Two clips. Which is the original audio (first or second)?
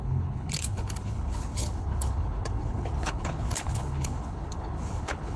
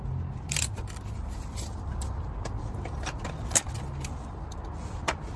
second